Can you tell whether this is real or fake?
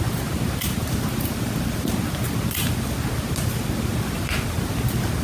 real